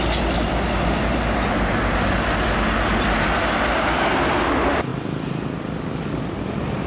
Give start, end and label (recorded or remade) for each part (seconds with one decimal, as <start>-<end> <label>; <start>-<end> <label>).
0.0-6.9 recorded